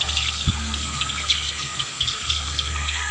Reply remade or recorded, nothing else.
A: remade